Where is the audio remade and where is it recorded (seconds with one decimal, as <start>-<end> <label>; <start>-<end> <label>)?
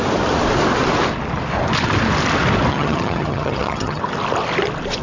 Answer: 0.0-2.7 recorded; 2.7-4.0 remade; 4.0-5.0 recorded